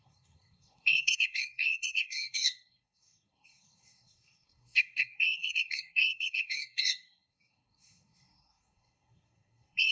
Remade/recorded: remade